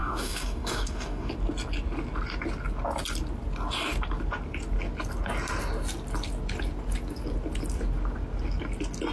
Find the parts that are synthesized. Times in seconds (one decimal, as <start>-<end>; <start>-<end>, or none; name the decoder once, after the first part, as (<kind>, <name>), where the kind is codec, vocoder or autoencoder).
0.0-1.3 (codec, DAC)